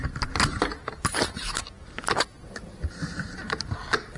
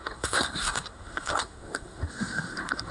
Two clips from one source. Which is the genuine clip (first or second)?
first